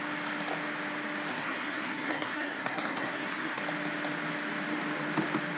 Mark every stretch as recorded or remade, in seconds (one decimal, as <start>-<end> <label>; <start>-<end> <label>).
0.0-1.3 recorded; 1.3-3.6 remade; 3.6-5.6 recorded